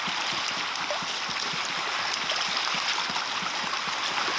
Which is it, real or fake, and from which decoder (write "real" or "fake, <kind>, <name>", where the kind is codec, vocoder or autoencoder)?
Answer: real